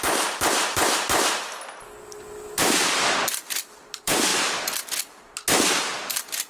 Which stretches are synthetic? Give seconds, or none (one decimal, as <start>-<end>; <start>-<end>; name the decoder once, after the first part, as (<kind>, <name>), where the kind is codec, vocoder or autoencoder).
0.0-4.3 (vocoder, BigVGAN v2)